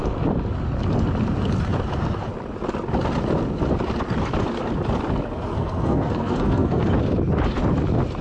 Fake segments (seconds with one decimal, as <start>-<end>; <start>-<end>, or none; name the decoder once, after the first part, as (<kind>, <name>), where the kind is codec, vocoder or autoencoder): 5.5-6.9 (codec, SNAC)